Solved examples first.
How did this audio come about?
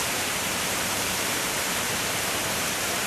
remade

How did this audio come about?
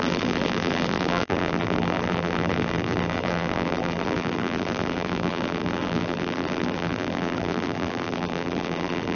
remade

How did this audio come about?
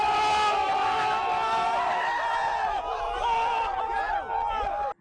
recorded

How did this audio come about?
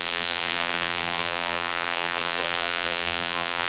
remade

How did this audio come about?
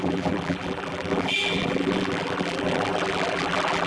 remade